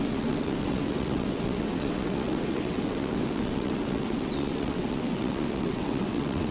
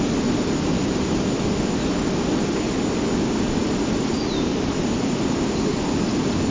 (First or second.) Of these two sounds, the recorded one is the second